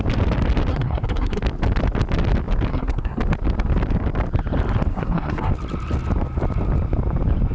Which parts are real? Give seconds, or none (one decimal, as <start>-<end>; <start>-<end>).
0.0-0.7; 1.4-2.7; 3.2-4.9; 5.5-7.5

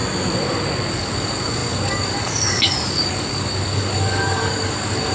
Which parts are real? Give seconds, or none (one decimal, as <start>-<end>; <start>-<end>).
0.0-0.9

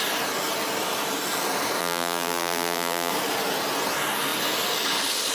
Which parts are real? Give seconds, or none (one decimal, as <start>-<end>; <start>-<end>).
0.0-1.8; 3.1-5.3

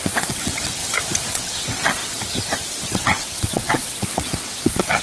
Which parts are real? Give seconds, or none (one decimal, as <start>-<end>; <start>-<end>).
0.8-1.3; 2.0-2.9

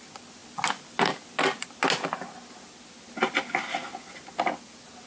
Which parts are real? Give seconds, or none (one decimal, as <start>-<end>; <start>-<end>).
0.0-5.1

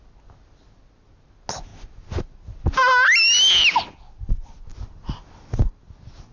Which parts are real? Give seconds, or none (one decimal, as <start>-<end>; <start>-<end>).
0.0-6.3

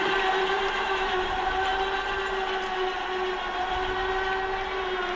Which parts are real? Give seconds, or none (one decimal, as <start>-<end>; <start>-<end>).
1.7-4.8

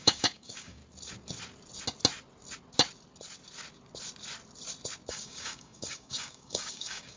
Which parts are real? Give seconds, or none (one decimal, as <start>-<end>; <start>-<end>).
0.8-5.1